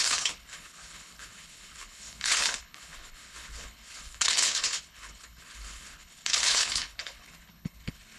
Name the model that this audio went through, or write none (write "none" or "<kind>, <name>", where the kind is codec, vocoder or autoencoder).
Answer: codec, HILCodec